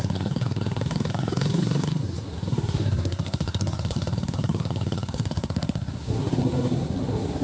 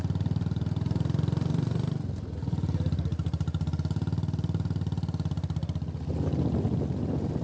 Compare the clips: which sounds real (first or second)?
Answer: second